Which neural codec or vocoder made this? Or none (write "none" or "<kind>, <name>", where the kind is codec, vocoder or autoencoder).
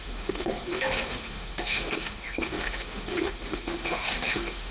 autoencoder, DAC-VAE